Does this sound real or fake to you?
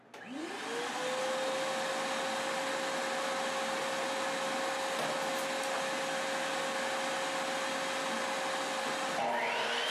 real